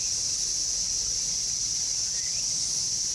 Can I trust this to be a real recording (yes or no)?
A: yes